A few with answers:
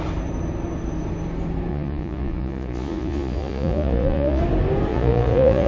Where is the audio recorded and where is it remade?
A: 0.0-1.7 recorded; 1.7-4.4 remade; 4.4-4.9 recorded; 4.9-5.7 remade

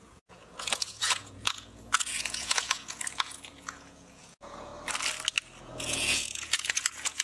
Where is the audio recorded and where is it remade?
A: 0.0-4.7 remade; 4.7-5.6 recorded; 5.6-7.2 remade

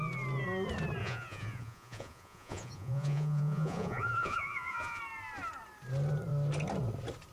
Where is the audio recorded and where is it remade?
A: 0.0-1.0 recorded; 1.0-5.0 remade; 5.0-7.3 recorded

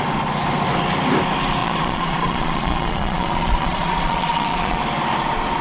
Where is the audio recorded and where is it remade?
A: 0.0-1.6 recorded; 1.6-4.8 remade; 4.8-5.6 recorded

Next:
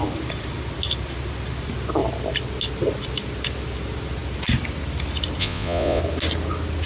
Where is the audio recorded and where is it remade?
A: 0.0-5.4 recorded; 5.4-6.0 remade; 6.0-6.9 recorded

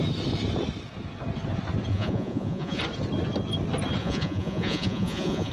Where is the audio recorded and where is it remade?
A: 0.0-1.9 recorded; 1.9-2.8 remade; 2.8-4.0 recorded; 4.0-5.5 remade